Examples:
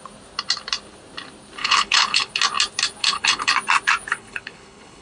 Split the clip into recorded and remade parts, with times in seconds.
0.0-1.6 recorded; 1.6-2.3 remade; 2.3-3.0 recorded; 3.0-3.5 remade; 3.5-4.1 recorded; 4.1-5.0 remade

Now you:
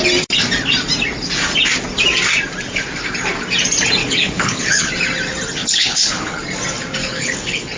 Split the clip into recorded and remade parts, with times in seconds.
0.0-4.0 recorded; 4.0-4.9 remade; 4.9-5.6 recorded; 5.6-6.4 remade; 6.4-7.0 recorded; 7.0-7.8 remade

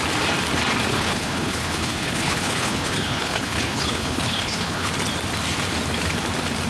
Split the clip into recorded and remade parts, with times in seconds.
0.0-0.9 recorded; 0.9-4.9 remade; 4.9-6.7 recorded

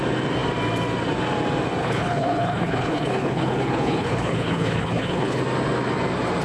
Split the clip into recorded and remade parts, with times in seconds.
0.0-1.8 recorded; 1.8-5.4 remade; 5.4-6.4 recorded

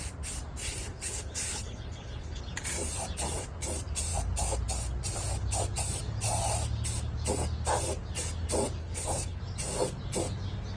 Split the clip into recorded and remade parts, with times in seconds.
0.0-0.6 recorded; 0.6-2.4 remade; 2.4-8.8 recorded; 8.8-9.4 remade; 9.4-10.8 recorded

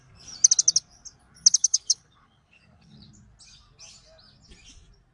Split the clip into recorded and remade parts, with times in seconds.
0.0-1.6 recorded; 1.6-3.1 remade; 3.1-5.1 recorded

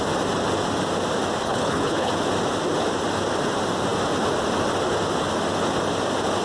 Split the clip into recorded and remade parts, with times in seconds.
0.0-1.4 recorded; 1.4-2.1 remade; 2.1-6.4 recorded